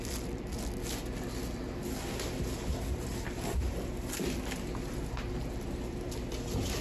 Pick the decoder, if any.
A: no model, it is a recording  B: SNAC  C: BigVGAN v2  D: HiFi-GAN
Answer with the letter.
A